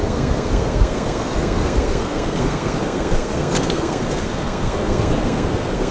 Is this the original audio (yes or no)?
no